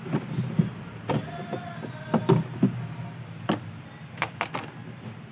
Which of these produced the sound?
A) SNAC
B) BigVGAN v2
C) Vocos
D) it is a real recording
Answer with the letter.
D